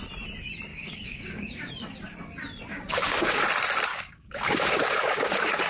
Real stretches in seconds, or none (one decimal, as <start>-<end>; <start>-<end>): 0.0-0.7; 1.7-2.7; 3.4-3.9